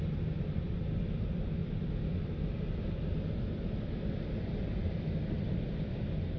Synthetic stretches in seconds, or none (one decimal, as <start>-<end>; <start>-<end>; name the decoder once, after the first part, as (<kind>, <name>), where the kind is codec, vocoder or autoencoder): none